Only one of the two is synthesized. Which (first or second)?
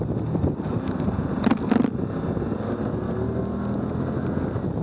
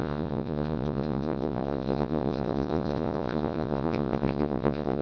second